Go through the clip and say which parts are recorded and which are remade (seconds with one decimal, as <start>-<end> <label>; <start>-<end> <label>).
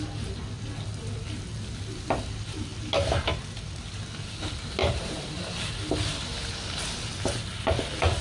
0.0-4.8 recorded; 4.8-5.4 remade; 5.4-8.2 recorded